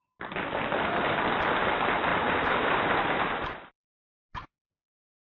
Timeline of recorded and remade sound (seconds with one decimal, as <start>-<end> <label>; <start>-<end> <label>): 0.0-2.1 recorded; 2.1-3.7 remade; 3.7-5.2 recorded